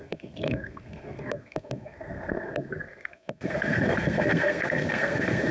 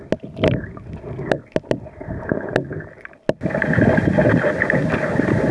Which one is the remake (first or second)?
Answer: first